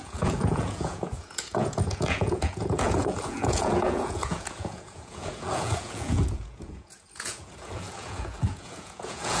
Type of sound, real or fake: fake